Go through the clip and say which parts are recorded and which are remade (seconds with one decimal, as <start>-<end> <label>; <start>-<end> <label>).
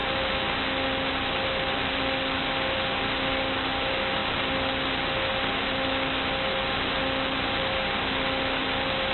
0.0-9.1 recorded